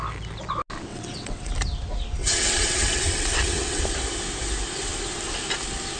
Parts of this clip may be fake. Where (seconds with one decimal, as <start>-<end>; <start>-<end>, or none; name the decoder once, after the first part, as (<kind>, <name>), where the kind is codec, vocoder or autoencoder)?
0.9-1.5 (vocoder, WaveNeXt); 2.2-3.8